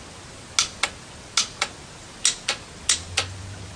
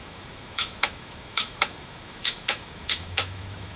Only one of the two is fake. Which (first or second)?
second